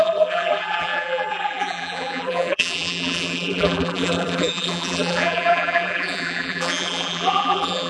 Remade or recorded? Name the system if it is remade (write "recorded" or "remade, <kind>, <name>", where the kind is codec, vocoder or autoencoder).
remade, vocoder, BigVGAN v2